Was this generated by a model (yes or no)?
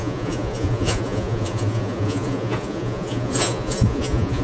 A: yes